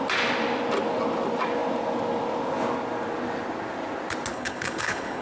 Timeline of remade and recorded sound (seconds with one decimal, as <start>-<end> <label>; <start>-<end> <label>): 0.0-4.3 recorded; 4.3-5.2 remade